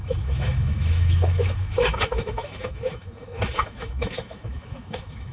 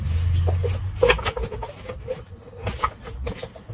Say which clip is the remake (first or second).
first